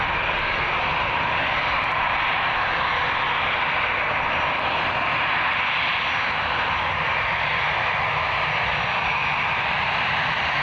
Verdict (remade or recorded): recorded